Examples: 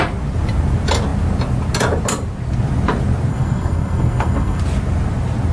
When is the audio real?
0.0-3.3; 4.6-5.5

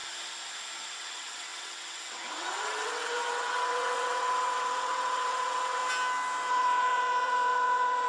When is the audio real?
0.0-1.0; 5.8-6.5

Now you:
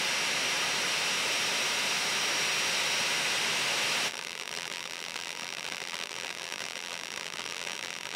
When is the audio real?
0.0-4.1

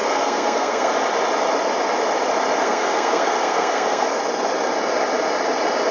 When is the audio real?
0.9-2.6; 4.2-5.9